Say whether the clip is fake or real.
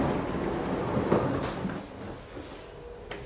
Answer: real